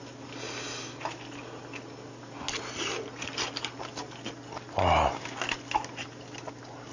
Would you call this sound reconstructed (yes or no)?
no